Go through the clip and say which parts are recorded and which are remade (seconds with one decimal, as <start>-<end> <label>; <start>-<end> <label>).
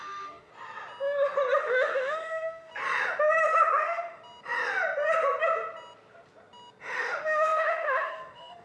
0.0-0.5 remade; 0.5-1.6 recorded; 1.6-2.7 remade; 2.7-3.4 recorded; 3.4-4.2 remade; 4.2-6.8 recorded; 6.8-8.6 remade